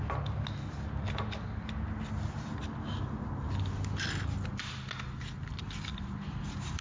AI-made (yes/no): no